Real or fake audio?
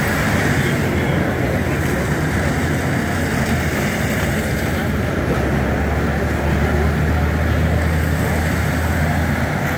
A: real